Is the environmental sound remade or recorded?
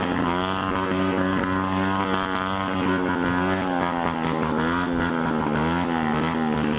recorded